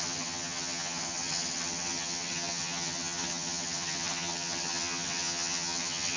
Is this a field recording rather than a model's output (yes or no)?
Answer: no